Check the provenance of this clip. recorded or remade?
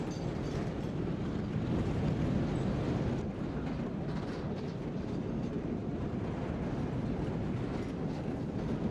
recorded